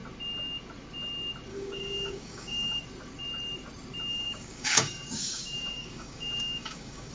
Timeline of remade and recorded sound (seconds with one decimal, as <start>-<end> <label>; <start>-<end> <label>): 0.0-1.5 recorded; 1.5-2.8 remade; 2.8-4.1 recorded; 4.1-7.1 remade